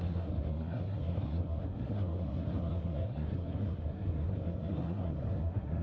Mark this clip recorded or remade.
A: remade